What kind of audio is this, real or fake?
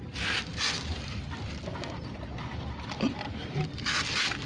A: real